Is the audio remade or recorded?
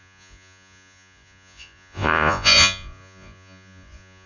remade